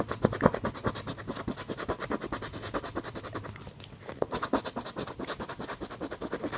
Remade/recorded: recorded